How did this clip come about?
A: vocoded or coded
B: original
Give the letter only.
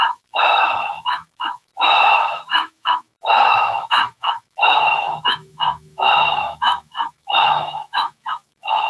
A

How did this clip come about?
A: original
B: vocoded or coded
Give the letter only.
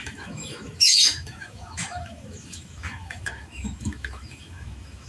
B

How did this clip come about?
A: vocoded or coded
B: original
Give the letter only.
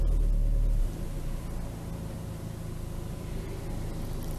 B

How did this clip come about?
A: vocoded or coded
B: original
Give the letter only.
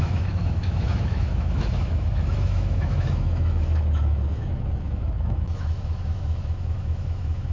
A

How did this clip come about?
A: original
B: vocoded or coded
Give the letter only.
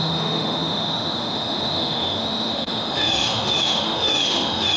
B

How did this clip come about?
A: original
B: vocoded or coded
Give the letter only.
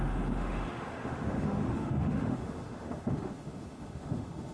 B